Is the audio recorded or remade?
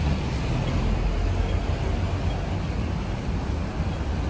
recorded